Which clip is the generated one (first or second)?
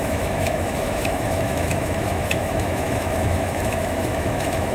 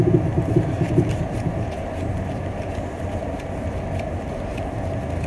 first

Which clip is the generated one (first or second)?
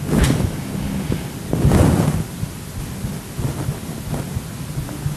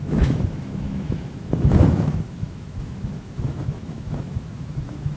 second